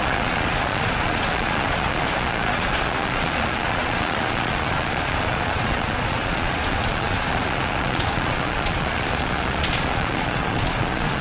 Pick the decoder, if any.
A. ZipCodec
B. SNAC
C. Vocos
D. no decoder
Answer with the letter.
C